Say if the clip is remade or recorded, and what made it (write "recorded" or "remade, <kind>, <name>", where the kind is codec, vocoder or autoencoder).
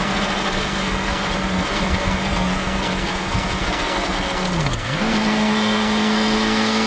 remade, codec, SNAC